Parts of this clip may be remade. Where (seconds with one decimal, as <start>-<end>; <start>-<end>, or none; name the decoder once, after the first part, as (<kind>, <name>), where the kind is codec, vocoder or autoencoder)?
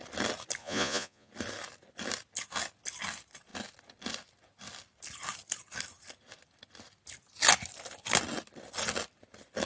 0.6-1.3 (vocoder, Vocos)